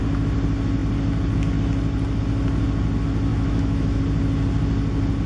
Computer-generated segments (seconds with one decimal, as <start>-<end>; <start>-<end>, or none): 3.3-4.0